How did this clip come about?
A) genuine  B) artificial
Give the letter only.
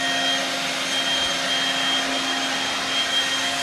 A